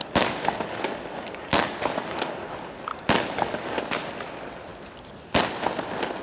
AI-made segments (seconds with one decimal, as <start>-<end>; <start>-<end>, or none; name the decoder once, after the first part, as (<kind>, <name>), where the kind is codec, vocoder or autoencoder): 0.0-2.5 (codec, DAC); 2.9-3.8